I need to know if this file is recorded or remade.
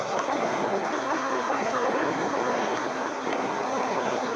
remade